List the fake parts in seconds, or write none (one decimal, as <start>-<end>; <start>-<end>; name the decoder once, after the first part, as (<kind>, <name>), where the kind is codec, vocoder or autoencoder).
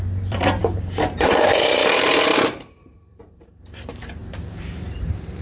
0.0-5.4 (vocoder, BigVGAN v2)